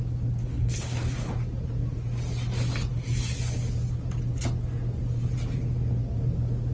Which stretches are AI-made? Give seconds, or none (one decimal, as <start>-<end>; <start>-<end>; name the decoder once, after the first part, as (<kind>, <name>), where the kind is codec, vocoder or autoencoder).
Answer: 0.4-1.3 (codec, HILCodec)